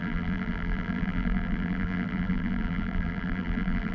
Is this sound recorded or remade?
remade